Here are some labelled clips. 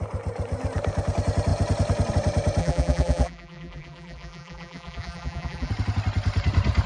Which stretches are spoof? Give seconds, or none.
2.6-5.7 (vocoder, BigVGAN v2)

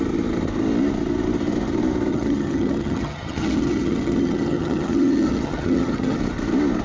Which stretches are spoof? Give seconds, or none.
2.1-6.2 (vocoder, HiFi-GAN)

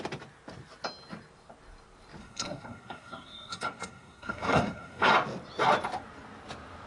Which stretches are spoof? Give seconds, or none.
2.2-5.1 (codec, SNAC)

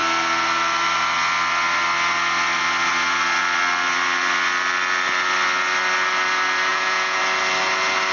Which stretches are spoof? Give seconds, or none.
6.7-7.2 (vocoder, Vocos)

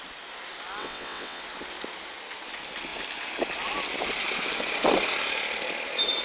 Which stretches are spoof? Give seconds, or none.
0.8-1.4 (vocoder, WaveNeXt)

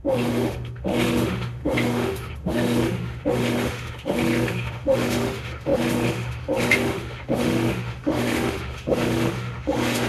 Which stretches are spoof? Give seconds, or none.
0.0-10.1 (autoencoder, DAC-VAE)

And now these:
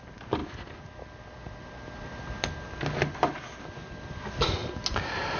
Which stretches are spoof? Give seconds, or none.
none